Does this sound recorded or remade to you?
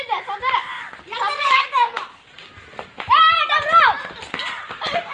recorded